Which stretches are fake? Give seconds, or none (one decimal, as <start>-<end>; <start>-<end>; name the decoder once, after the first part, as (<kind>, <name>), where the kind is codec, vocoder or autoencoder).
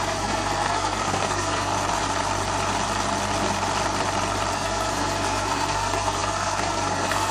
0.0-1.7 (codec, SNAC); 4.5-7.3